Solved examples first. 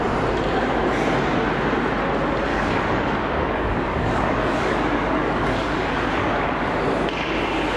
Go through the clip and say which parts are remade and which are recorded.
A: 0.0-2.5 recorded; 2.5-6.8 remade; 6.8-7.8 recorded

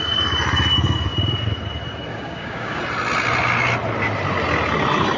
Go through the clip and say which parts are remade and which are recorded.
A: 0.0-2.1 recorded; 2.1-2.8 remade; 2.8-5.2 recorded

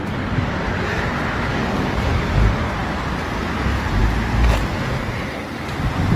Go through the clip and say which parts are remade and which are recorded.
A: 0.0-1.5 recorded; 1.5-2.1 remade; 2.1-6.2 recorded

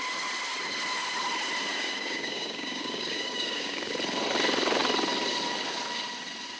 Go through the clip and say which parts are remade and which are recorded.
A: 0.0-1.7 recorded; 1.7-3.9 remade; 3.9-6.6 recorded